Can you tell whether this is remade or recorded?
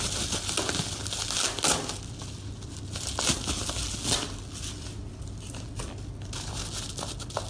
recorded